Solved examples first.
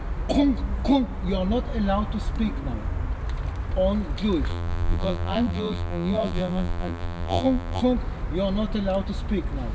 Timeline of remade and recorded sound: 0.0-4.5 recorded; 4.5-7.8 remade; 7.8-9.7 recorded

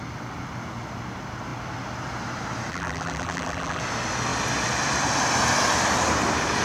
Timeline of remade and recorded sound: 0.0-2.7 recorded; 2.7-3.8 remade; 3.8-6.6 recorded

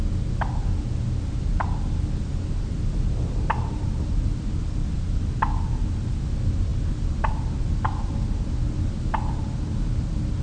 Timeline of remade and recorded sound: 0.0-10.4 recorded

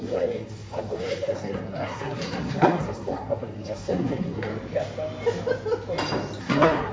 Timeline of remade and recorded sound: 0.0-4.5 remade; 4.5-6.4 recorded; 6.4-6.9 remade

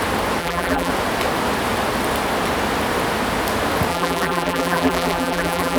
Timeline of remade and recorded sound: 0.0-0.4 recorded; 0.4-0.9 remade; 0.9-3.9 recorded; 3.9-5.8 remade

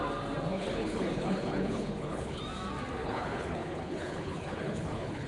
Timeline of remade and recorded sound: 0.0-0.5 recorded; 0.5-2.4 remade; 2.4-3.0 recorded; 3.0-5.3 remade

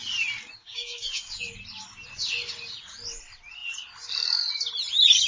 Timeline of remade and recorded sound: 0.0-0.6 recorded; 0.6-1.4 remade; 1.4-5.3 recorded

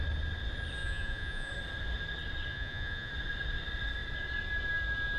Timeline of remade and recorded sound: 0.0-0.8 recorded; 0.8-1.5 remade; 1.5-2.5 recorded; 2.5-3.1 remade; 3.1-5.2 recorded